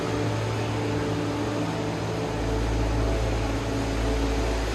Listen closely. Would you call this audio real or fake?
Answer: real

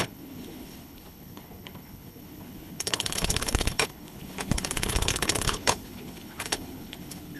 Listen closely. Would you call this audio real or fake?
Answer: fake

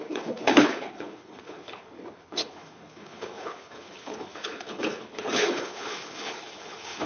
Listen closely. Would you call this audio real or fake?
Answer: fake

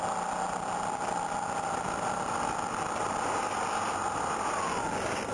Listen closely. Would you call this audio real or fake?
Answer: real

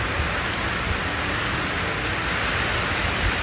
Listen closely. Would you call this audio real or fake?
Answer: real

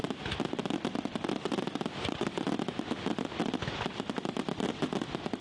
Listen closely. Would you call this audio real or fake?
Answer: real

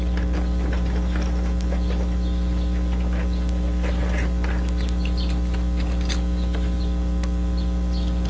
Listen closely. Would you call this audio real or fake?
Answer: real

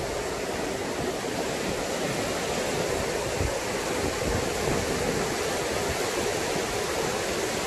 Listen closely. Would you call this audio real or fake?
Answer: real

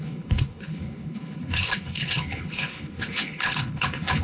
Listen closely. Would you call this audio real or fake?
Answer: fake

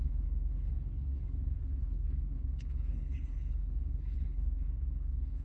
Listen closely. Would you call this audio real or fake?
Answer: fake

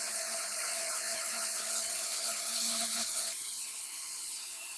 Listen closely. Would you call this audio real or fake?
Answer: fake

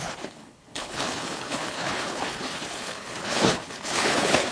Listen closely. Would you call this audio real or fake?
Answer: fake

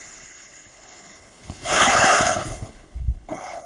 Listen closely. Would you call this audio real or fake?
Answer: fake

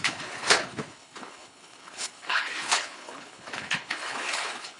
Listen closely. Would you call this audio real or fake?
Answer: fake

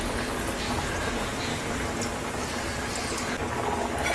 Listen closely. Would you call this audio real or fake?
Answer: real